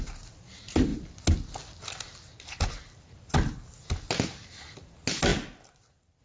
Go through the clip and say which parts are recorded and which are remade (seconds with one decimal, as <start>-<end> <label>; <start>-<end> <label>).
0.0-6.2 recorded